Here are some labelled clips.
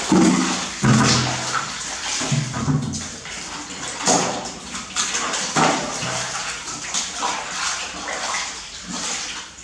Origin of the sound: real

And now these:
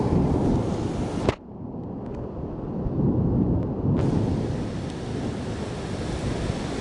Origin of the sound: real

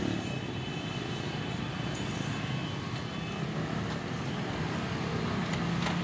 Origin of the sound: real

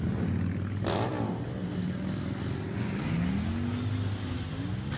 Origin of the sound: real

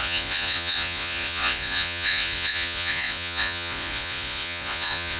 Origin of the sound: fake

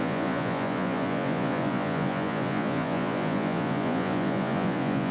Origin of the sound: fake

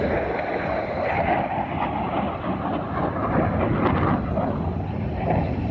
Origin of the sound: real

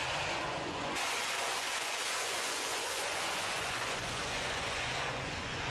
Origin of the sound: fake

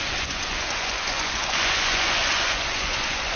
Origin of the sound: fake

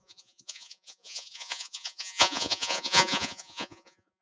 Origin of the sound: fake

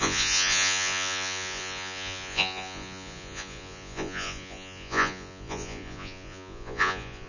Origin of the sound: fake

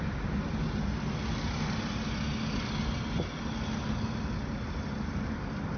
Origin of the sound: real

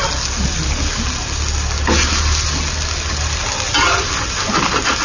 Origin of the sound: real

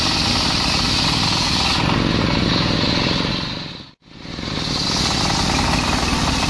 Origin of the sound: real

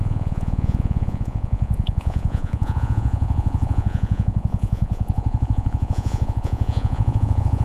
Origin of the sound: fake